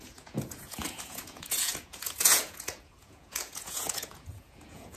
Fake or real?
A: fake